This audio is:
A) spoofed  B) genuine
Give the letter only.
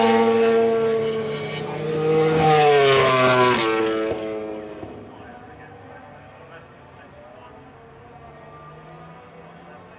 B